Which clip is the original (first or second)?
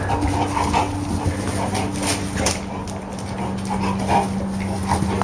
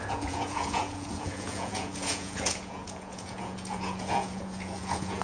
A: first